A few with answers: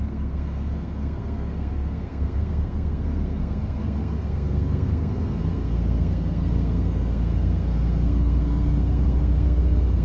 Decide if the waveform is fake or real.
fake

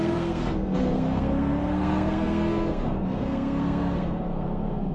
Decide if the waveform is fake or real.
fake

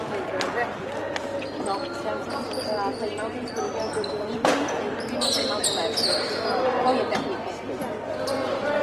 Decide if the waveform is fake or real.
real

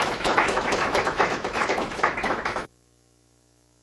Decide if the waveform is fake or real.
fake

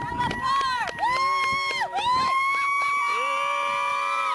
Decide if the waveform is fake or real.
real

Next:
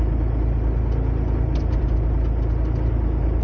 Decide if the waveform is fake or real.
real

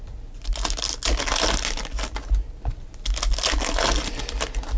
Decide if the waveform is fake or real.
real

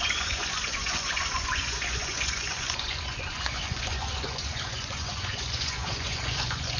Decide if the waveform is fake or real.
fake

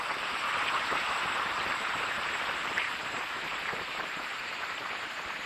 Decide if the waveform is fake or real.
fake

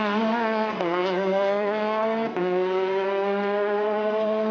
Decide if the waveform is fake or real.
fake